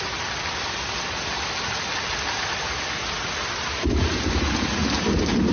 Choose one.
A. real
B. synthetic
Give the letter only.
A